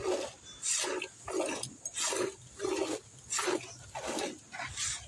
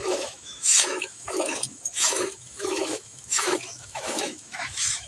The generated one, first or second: second